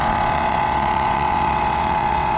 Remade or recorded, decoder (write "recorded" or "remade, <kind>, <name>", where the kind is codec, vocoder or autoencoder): remade, vocoder, WaveNeXt